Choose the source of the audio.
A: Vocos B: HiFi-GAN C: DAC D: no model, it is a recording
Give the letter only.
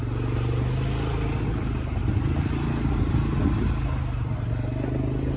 D